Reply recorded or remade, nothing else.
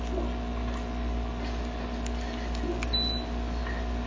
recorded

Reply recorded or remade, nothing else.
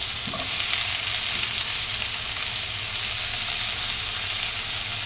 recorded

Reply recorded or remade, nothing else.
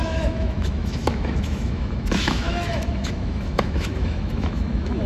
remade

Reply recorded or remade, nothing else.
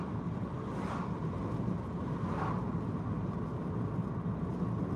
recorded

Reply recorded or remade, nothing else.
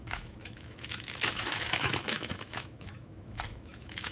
remade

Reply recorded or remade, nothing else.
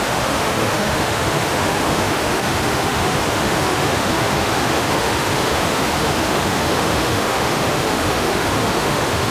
remade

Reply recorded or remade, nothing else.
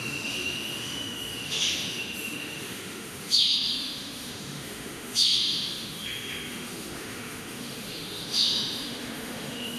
remade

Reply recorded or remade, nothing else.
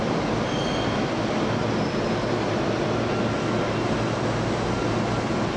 recorded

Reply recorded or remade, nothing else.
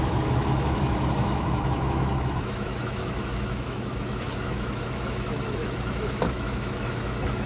remade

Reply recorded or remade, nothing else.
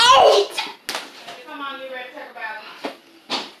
recorded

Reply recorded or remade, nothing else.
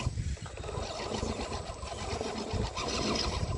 recorded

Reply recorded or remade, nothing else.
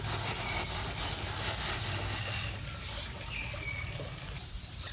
recorded